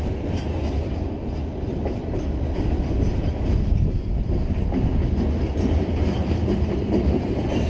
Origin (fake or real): real